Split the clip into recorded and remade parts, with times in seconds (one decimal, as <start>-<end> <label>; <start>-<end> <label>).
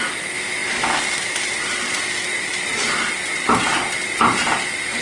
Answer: 0.0-5.0 recorded